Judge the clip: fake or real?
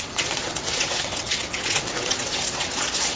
fake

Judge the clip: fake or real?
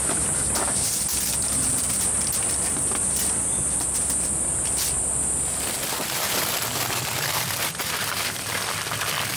real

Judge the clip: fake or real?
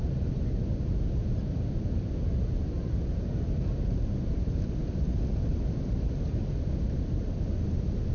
real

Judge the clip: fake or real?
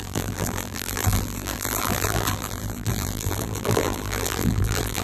fake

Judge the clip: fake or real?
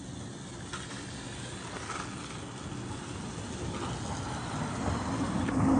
real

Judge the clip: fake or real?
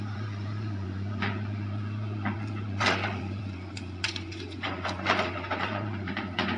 fake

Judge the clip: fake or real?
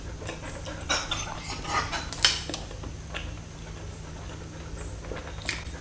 real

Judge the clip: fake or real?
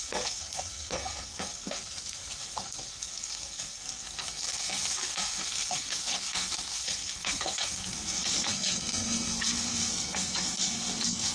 fake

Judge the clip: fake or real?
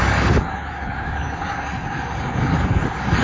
fake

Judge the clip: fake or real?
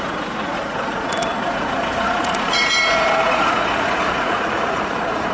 fake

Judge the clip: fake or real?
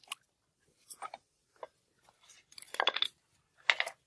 real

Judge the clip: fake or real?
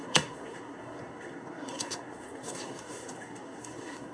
fake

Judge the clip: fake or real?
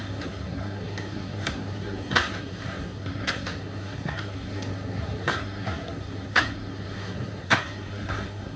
fake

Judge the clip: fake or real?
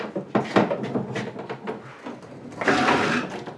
real